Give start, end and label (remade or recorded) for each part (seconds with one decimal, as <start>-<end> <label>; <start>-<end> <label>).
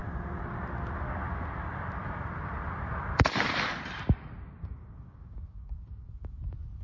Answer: 0.0-4.6 recorded; 4.6-6.1 remade; 6.1-6.8 recorded